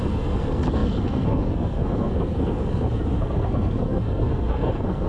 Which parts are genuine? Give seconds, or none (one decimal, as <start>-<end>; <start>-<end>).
none